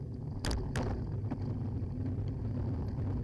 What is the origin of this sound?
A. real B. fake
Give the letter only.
A